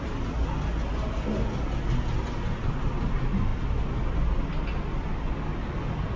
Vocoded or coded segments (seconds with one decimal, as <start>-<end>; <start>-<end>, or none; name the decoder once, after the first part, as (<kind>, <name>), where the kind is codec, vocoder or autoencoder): none